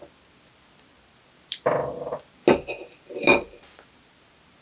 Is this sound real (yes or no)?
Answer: yes